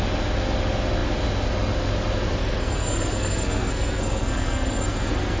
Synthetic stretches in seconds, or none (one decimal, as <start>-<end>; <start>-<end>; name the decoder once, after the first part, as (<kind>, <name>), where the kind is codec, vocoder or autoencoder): 2.4-5.4 (codec, SNAC)